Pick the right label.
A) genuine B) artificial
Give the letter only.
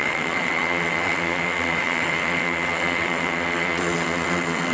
B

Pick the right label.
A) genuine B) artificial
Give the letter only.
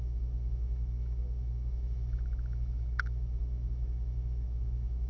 B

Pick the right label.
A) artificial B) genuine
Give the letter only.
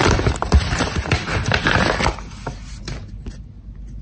B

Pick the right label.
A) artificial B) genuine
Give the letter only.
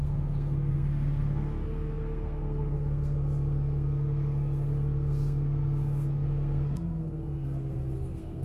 A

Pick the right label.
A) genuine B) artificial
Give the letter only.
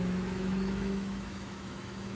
B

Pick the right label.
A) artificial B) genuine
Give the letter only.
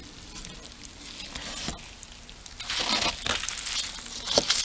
B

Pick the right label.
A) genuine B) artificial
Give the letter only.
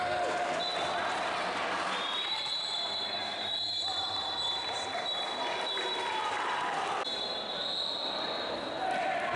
B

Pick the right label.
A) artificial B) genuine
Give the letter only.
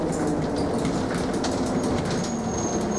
B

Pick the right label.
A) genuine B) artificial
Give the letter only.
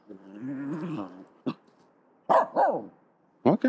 A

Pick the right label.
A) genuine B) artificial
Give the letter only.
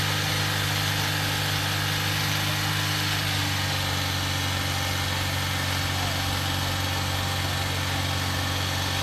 A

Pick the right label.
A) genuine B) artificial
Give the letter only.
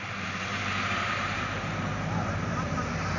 B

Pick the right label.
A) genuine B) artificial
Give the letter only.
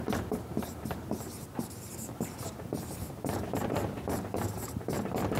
B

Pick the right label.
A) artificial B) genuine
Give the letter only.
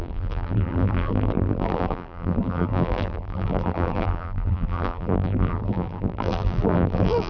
A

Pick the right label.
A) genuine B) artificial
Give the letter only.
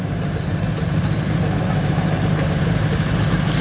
A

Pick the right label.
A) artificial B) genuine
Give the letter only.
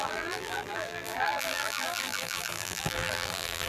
A